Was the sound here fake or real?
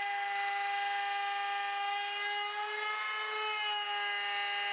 real